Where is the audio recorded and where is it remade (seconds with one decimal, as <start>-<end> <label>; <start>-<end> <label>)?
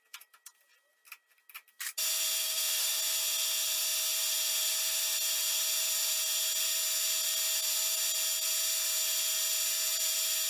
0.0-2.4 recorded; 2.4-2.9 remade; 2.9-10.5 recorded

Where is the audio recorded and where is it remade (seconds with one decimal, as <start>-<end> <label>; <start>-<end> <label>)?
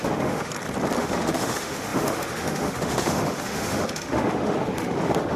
0.0-0.5 remade; 0.5-1.0 recorded; 1.0-5.4 remade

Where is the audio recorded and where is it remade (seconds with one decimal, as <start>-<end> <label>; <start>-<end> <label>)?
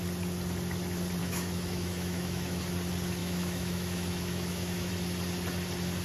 0.0-1.2 recorded; 1.2-2.6 remade; 2.6-3.2 recorded; 3.2-4.9 remade; 4.9-6.0 recorded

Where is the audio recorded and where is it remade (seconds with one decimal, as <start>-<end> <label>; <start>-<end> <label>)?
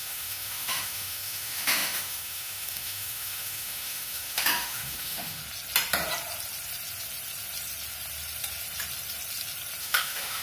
0.0-5.4 remade; 5.4-9.8 recorded; 9.8-10.4 remade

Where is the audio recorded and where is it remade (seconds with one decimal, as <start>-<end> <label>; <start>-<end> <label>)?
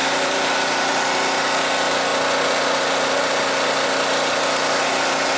0.0-5.4 recorded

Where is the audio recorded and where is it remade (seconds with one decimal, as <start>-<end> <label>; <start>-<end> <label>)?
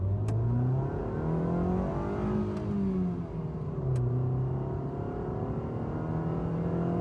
0.0-7.0 recorded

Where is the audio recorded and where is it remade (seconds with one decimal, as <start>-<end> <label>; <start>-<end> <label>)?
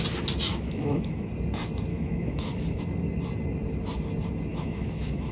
0.0-0.5 recorded; 0.5-1.3 remade; 1.3-1.9 recorded; 1.9-2.8 remade; 2.8-4.5 recorded; 4.5-5.3 remade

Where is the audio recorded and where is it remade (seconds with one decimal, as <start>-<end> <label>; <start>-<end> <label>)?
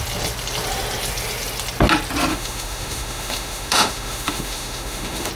0.0-2.3 recorded; 2.3-5.3 remade